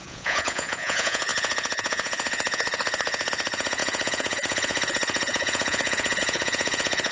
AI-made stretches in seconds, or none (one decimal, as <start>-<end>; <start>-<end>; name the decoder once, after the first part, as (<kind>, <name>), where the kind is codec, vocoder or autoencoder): 0.0-7.1 (vocoder, Vocos)